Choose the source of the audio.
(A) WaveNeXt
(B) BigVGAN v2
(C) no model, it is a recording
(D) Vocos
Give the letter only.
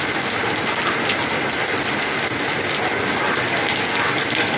C